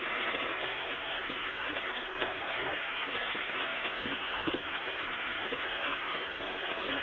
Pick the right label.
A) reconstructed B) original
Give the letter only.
A